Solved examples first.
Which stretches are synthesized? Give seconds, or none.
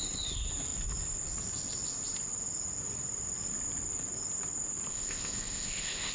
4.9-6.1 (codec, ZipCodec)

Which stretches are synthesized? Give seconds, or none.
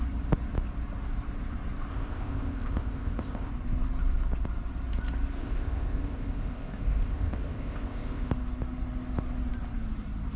1.9-3.5 (codec, ZipCodec); 5.4-8.3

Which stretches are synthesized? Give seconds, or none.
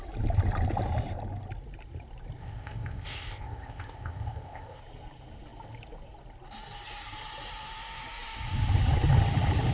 2.4-4.8 (codec, ZipCodec)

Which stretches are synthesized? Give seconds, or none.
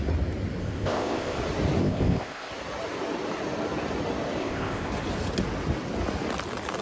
0.6-1.4 (codec, ZipCodec); 1.8-2.5; 4.4-4.9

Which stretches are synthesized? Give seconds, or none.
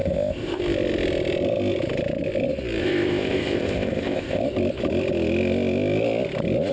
0.0-0.6 (codec, ZipCodec); 2.8-4.4